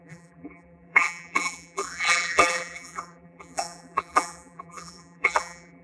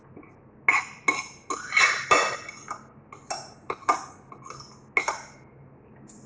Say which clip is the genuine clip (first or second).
second